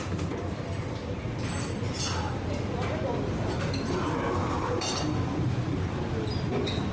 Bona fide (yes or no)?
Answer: yes